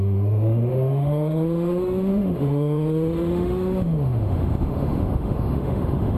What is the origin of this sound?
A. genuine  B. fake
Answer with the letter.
B